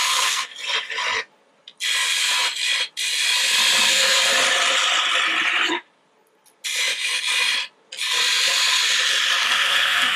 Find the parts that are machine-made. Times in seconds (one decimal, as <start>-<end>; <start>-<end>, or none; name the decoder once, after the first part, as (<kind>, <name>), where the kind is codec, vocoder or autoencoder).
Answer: 0.0-0.5 (codec, SNAC); 3.9-4.3; 9.4-10.2